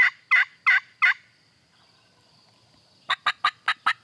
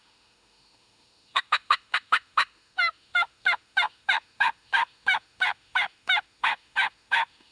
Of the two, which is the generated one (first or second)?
second